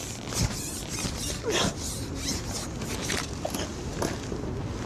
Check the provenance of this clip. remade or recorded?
recorded